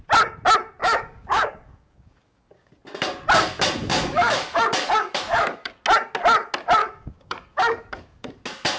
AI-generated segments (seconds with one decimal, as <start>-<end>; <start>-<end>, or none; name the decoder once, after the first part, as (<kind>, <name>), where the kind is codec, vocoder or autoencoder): 0.8-2.7 (codec, DAC); 3.9-5.7; 6.8-8.3